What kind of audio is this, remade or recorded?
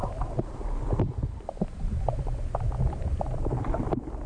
recorded